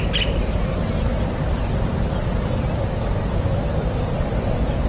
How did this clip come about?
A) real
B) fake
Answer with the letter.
B